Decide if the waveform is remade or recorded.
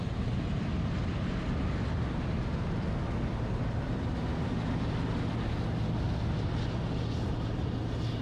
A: recorded